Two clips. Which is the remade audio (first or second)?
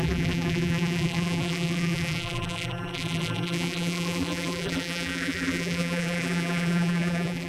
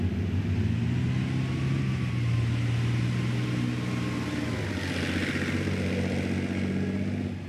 first